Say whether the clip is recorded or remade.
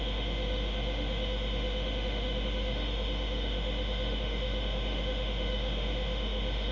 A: remade